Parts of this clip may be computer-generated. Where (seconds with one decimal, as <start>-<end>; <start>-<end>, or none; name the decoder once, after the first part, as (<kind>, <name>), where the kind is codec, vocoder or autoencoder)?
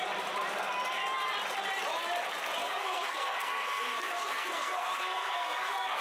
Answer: 2.6-6.0 (codec, SNAC)